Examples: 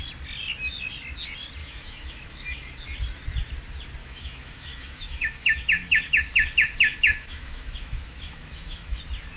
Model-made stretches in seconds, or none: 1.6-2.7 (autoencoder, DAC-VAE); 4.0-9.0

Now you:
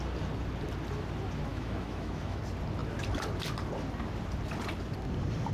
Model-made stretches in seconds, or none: 1.5-2.4 (autoencoder, DAC-VAE)

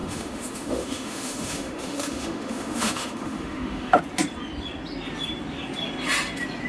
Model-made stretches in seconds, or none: 0.0-4.0 (autoencoder, DAC-VAE)

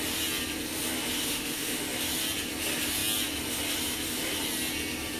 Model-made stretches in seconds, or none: 1.2-1.8 (autoencoder, DAC-VAE)

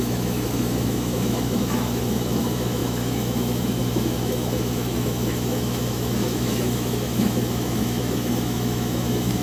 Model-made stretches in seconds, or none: 0.0-9.4 (autoencoder, DAC-VAE)